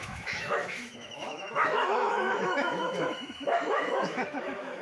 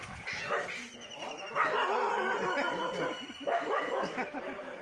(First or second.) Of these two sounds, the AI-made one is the first